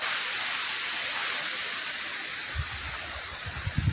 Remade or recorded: recorded